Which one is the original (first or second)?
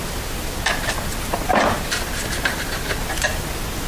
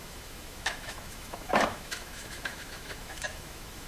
first